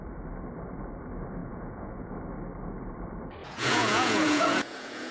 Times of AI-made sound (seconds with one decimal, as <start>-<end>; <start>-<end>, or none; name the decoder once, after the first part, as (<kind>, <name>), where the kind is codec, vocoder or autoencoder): 1.4-2.1 (vocoder, Vocos); 3.4-5.1